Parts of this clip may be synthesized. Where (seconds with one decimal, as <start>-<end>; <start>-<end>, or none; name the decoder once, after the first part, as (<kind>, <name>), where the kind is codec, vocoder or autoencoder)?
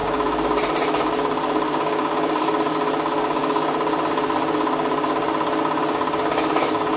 none